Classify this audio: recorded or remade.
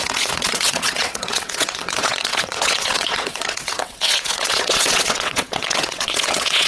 remade